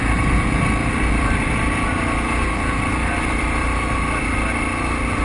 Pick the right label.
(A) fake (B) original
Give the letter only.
B